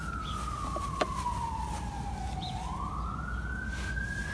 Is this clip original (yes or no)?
yes